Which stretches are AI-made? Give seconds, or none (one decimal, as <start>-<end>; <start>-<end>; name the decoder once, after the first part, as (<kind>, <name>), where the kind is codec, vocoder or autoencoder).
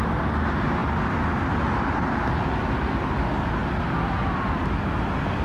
none